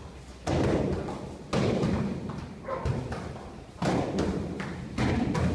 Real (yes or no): yes